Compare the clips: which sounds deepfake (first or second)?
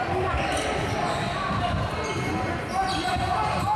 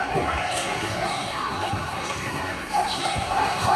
second